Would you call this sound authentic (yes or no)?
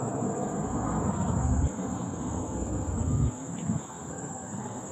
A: no